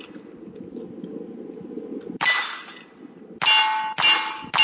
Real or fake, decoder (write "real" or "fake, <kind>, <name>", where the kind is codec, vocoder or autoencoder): real